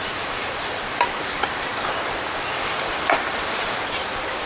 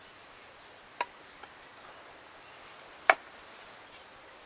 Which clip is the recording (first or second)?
second